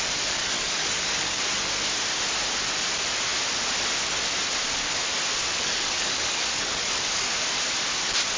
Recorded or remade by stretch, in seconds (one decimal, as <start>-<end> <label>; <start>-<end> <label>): 0.0-0.4 recorded; 0.4-1.4 remade; 1.4-5.5 recorded; 5.5-7.3 remade; 7.3-8.4 recorded